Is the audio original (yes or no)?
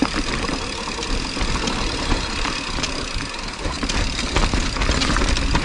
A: yes